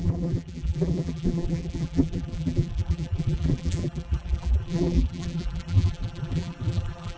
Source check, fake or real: fake